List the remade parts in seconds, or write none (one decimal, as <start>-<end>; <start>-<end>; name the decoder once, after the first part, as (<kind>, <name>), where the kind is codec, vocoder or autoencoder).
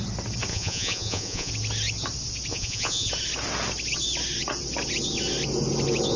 0.5-1.5 (vocoder, Vocos); 2.5-3.1